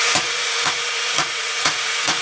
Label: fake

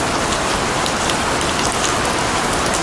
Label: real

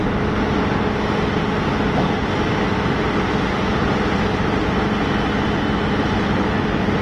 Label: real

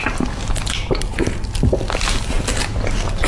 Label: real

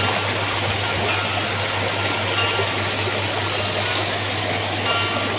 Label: real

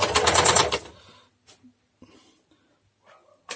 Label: real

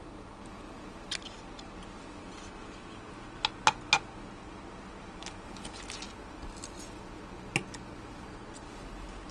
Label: real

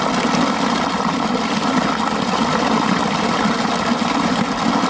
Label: real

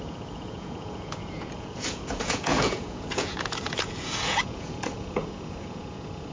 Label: fake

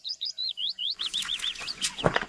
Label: fake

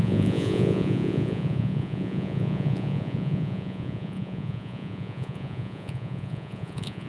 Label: fake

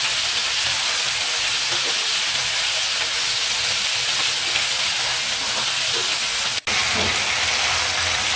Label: real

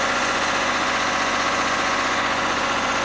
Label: fake